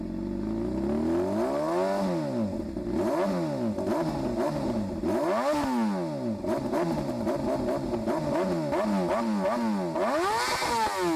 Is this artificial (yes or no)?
no